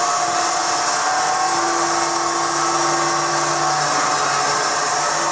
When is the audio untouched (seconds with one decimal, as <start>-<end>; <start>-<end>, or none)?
0.0-5.3